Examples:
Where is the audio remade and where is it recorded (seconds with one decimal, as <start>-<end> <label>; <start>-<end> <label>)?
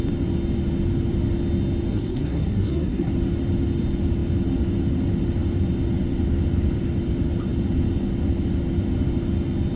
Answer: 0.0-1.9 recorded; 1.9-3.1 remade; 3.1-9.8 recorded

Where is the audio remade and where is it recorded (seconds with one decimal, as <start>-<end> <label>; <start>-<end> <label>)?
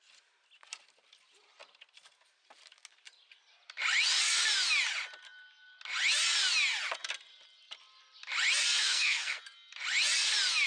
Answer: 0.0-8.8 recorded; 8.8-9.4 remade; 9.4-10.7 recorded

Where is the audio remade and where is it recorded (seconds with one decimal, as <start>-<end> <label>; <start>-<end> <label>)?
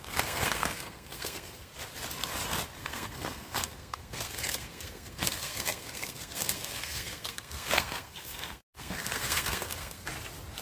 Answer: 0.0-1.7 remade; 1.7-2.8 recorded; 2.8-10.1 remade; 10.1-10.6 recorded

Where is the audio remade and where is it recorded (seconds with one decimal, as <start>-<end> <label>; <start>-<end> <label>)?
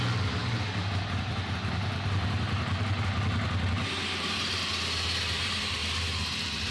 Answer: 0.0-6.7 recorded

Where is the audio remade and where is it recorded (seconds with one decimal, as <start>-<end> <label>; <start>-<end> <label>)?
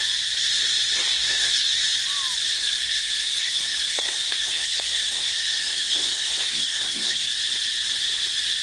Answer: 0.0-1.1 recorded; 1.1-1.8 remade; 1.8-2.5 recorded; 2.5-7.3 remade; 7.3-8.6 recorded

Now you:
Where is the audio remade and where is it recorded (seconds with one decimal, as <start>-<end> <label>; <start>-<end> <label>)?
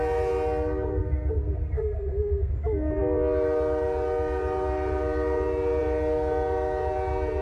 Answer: 0.0-1.0 recorded; 1.0-2.5 remade; 2.5-7.4 recorded